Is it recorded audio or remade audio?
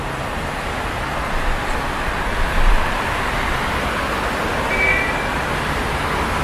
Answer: recorded